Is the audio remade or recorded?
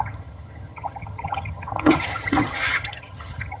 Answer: remade